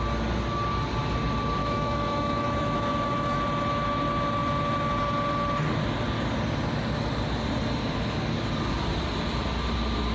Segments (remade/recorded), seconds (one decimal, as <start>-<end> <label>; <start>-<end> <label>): 0.0-1.6 recorded; 1.6-3.4 remade; 3.4-10.1 recorded